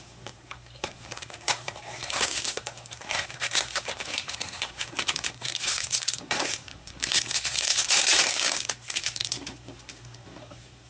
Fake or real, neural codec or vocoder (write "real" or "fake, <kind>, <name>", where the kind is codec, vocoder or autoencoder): fake, codec, SNAC